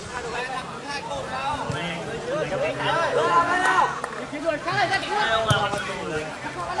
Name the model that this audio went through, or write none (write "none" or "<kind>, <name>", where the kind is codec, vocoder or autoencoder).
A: none